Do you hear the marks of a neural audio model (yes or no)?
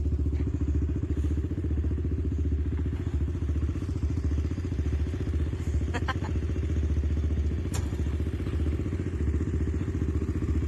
no